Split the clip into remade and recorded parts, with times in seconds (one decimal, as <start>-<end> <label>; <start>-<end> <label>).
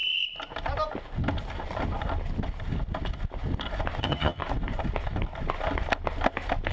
0.0-4.0 recorded; 4.0-4.4 remade; 4.4-6.7 recorded